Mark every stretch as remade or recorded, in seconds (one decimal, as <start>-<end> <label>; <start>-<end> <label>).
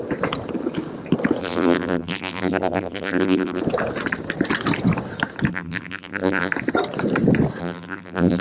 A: 0.0-1.4 recorded; 1.4-3.6 remade; 3.6-5.5 recorded; 5.5-6.5 remade; 6.5-7.6 recorded; 7.6-8.4 remade